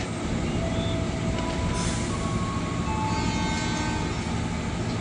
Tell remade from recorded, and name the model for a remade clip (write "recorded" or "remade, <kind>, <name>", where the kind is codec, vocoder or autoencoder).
recorded